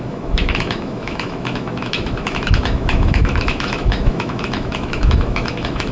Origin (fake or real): fake